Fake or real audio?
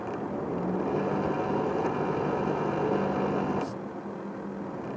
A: real